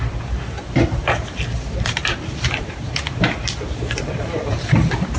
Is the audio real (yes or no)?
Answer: no